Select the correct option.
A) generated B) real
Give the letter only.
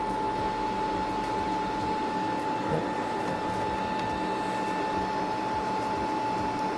B